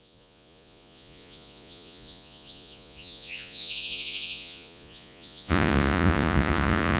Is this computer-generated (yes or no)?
yes